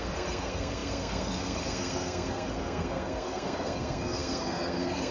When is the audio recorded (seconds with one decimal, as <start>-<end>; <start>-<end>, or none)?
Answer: none